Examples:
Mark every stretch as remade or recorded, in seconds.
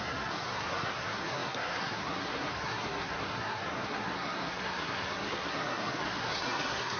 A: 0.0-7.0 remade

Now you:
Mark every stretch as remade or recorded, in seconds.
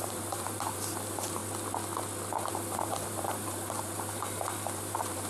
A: 0.0-1.4 remade; 1.4-2.5 recorded; 2.5-5.3 remade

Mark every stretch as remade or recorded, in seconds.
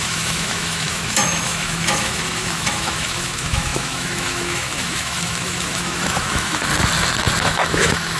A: 0.0-6.7 remade; 6.7-7.4 recorded; 7.4-8.2 remade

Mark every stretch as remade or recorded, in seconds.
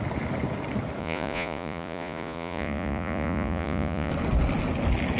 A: 0.0-1.0 recorded; 1.0-4.1 remade; 4.1-5.2 recorded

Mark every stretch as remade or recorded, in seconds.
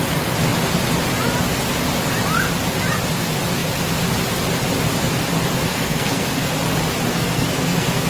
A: 0.0-5.7 recorded; 5.7-6.5 remade; 6.5-7.1 recorded; 7.1-8.1 remade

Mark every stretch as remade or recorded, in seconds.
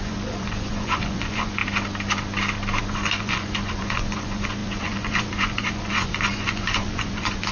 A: 0.0-1.6 remade; 1.6-2.8 recorded; 2.8-7.5 remade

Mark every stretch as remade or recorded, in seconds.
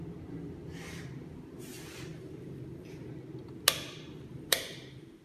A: 0.0-2.1 recorded; 2.1-3.1 remade; 3.1-4.3 recorded; 4.3-5.2 remade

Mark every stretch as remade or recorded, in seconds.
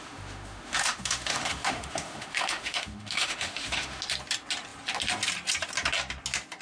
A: 0.0-4.0 remade; 4.0-6.6 recorded